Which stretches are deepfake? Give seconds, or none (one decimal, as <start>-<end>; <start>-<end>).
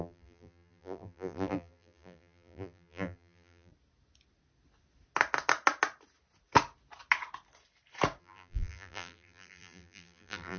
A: 0.0-3.7; 8.2-10.6